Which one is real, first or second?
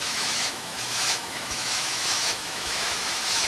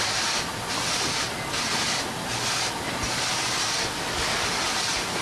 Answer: second